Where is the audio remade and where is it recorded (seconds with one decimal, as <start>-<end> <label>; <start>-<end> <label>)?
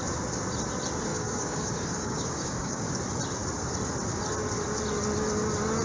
0.0-1.1 recorded; 1.1-2.9 remade; 2.9-5.8 recorded